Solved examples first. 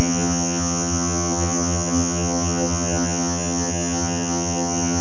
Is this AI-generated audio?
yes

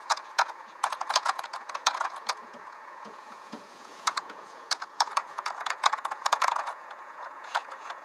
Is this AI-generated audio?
yes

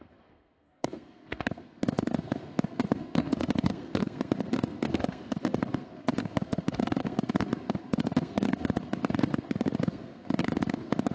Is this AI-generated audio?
yes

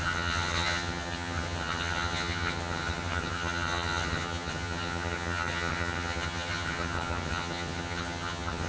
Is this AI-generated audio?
yes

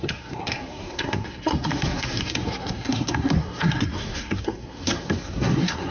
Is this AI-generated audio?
yes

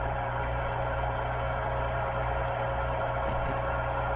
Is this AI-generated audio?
no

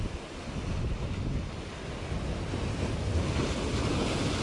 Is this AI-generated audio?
no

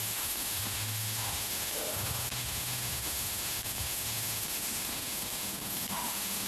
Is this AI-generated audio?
yes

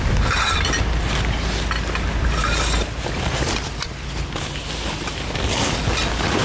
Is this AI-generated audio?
no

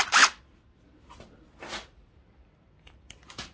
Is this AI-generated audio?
no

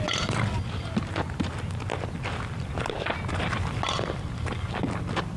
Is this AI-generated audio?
no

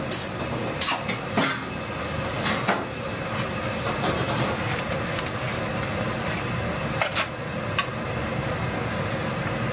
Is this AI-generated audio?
no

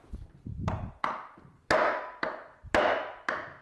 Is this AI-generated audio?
yes